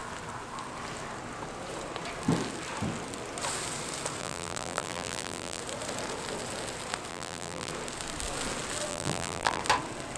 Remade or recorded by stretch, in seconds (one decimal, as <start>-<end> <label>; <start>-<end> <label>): 0.0-4.2 recorded; 4.2-5.6 remade; 5.6-7.1 recorded; 7.1-7.7 remade; 7.7-8.9 recorded; 8.9-9.6 remade; 9.6-10.2 recorded